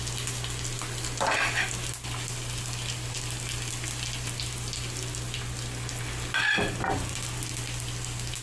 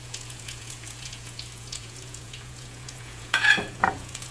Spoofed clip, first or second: second